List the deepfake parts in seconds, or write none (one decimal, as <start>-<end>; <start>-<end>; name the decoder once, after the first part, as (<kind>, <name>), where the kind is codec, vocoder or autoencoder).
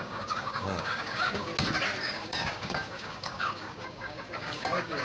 0.0-1.5 (codec, DAC); 2.0-5.0